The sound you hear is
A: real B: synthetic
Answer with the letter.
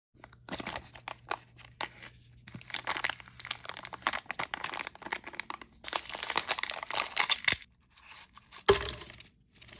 A